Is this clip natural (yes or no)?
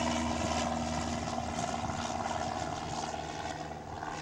yes